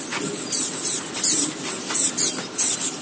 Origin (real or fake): real